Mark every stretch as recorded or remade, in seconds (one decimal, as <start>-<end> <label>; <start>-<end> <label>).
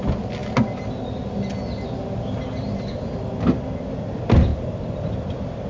0.0-5.7 recorded